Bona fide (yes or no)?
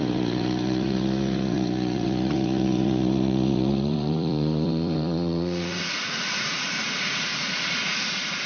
no